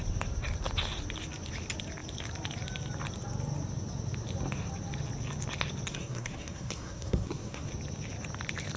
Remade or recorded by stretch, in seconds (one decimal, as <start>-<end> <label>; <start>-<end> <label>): 0.0-5.9 recorded; 5.9-7.7 remade; 7.7-8.8 recorded